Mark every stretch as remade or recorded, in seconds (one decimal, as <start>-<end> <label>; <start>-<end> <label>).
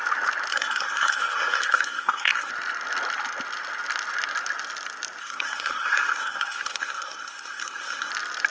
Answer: 0.0-0.5 recorded; 0.5-2.5 remade; 2.5-5.2 recorded; 5.2-8.1 remade; 8.1-8.5 recorded